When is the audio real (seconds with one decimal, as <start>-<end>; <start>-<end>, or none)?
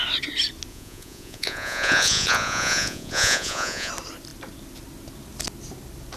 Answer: 0.0-0.7; 3.9-6.2